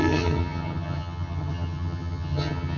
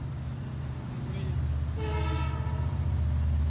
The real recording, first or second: second